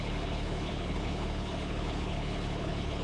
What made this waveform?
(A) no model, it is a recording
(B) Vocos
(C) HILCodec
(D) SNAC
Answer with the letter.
C